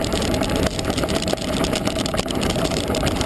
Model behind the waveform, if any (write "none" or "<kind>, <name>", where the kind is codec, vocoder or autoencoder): vocoder, BigVGAN v2